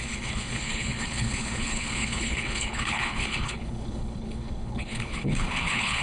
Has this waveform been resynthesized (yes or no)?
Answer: yes